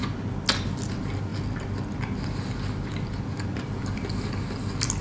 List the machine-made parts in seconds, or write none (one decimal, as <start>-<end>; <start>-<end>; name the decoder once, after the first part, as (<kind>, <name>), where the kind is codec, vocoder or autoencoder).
none